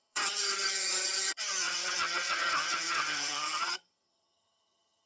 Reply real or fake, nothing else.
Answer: fake